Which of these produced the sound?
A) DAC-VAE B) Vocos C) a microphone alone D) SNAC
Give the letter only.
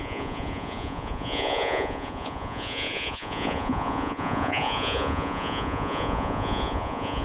B